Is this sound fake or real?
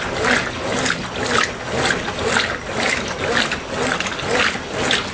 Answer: real